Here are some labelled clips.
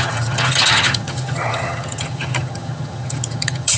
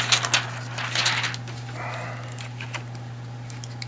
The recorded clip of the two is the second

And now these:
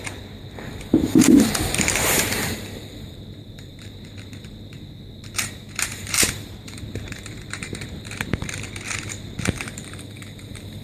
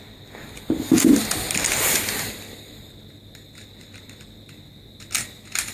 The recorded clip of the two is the second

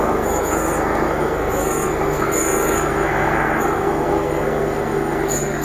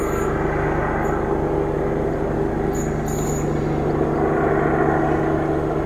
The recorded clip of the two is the second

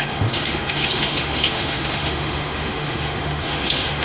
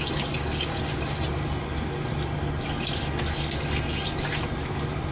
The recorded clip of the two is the second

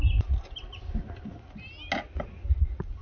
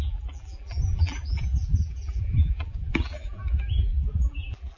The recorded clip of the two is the first